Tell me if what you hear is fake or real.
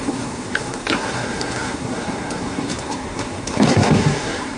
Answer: fake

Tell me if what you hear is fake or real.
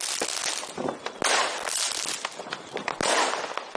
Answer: real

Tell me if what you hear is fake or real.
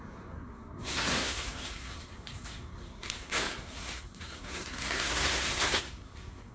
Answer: fake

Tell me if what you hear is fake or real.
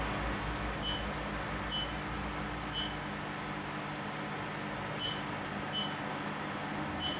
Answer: real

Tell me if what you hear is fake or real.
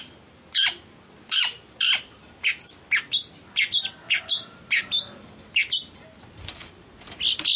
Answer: real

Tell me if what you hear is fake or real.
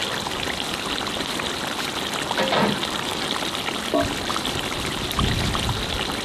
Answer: real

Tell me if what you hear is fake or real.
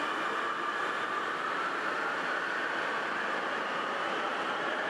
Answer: real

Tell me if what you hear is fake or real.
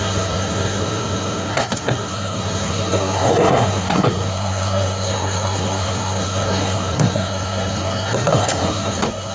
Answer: fake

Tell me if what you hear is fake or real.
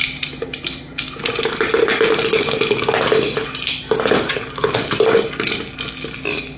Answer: real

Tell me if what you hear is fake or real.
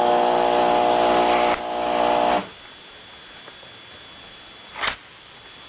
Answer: real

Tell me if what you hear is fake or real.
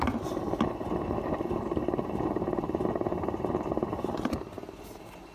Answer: real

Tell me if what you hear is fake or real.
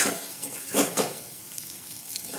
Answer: fake